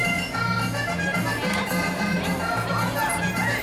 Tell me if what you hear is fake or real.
real